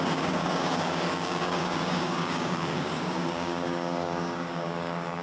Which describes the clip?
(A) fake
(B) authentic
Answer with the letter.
A